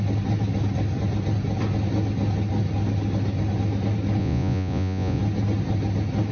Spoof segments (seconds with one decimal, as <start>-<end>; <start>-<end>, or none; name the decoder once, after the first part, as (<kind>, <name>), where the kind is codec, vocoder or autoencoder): 4.2-5.2 (vocoder, Vocos)